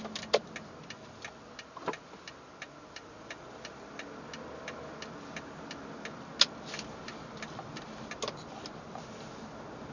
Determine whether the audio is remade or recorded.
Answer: recorded